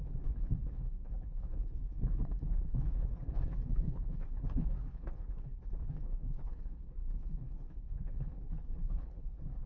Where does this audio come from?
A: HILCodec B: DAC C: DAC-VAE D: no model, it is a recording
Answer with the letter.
A